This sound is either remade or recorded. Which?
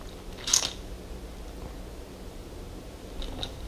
recorded